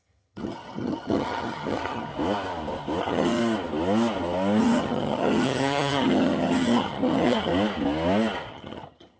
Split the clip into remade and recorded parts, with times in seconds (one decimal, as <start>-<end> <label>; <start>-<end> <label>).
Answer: 0.0-2.1 remade; 2.1-3.0 recorded; 3.0-3.4 remade; 3.4-4.6 recorded; 4.6-7.5 remade; 7.5-8.5 recorded; 8.5-9.2 remade